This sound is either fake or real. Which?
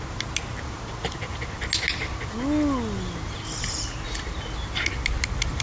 real